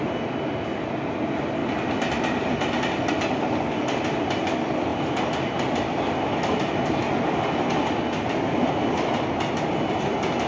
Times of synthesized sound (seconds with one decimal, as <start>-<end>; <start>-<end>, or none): none